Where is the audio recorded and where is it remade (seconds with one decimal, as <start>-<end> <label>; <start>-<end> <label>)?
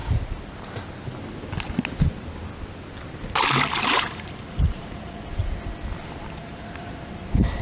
0.0-3.7 recorded; 3.7-5.4 remade; 5.4-6.4 recorded; 6.4-7.6 remade